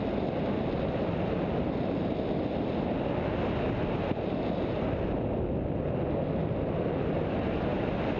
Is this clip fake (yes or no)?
no